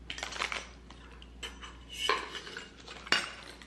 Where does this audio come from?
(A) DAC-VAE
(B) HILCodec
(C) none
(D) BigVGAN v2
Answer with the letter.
C